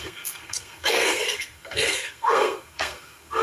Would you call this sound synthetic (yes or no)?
yes